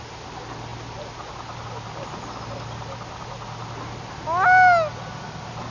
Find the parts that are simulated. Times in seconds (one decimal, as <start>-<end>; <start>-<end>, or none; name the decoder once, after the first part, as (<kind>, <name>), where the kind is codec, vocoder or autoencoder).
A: none